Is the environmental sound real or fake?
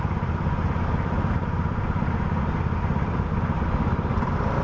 real